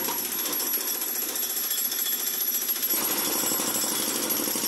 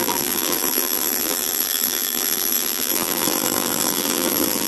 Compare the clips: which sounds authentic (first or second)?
first